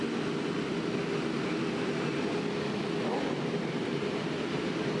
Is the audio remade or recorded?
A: recorded